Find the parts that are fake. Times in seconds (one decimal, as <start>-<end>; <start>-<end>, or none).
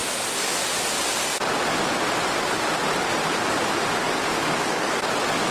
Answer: 4.3-5.0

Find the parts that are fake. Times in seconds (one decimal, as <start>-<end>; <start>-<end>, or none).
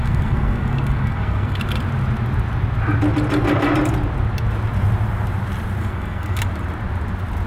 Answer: 0.0-1.6; 5.8-6.4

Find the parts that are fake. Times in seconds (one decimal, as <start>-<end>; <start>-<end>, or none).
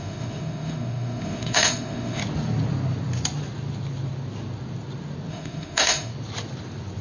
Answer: 0.0-2.2; 5.3-6.1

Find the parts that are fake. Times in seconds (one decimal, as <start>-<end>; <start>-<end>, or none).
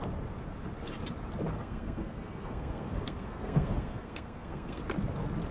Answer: 1.5-4.8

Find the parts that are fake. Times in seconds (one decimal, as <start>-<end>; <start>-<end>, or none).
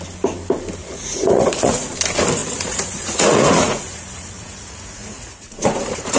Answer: 0.8-1.9; 2.4-6.2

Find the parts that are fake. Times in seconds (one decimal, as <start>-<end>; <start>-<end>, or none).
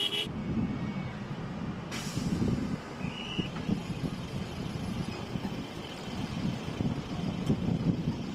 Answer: 0.0-0.4; 1.3-8.3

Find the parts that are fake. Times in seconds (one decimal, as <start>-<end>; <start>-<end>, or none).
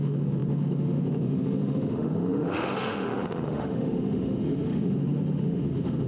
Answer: 0.0-6.1